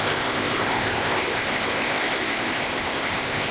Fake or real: fake